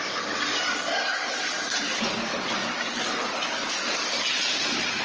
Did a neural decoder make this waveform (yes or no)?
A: no